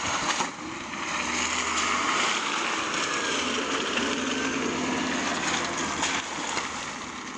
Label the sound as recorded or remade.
recorded